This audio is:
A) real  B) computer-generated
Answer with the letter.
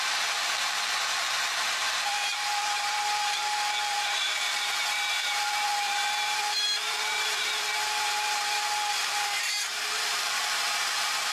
B